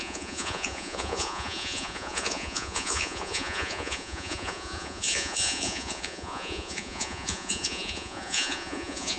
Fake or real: fake